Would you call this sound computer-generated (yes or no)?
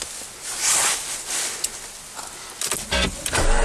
no